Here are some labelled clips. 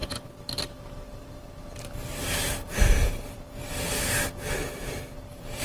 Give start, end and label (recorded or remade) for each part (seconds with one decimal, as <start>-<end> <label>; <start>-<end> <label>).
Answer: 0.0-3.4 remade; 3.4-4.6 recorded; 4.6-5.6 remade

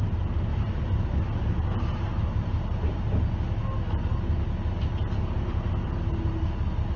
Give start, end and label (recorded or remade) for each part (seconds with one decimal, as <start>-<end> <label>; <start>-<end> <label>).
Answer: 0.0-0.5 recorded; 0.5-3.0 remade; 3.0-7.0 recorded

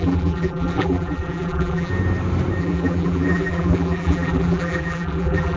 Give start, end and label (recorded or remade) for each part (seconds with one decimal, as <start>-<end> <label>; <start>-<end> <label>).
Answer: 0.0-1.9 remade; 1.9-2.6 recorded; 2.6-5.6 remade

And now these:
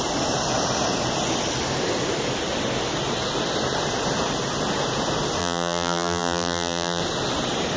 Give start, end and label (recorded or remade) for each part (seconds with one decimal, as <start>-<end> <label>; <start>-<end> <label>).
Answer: 0.0-5.4 recorded; 5.4-7.0 remade; 7.0-7.8 recorded